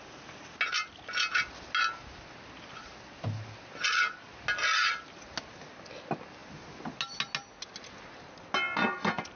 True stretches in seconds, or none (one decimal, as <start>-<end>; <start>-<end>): 0.0-9.4